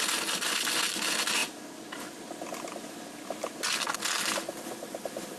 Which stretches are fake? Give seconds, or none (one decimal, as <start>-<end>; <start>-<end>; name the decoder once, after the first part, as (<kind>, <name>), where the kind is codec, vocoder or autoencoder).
none